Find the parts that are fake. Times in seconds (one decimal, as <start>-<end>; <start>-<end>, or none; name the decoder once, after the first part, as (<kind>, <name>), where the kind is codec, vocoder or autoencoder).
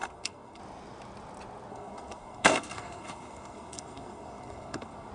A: 0.0-0.6 (codec, SNAC); 1.7-5.1